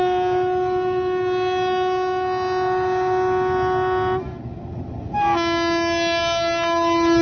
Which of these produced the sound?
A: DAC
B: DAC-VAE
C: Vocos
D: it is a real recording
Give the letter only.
D